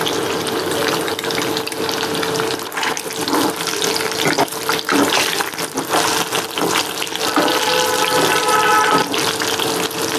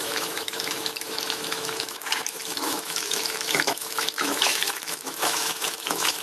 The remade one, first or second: second